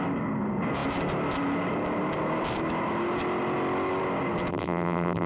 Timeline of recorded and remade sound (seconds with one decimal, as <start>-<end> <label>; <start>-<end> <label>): 0.0-4.5 recorded; 4.5-5.3 remade